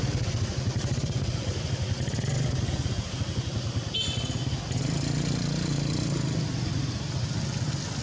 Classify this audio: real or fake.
real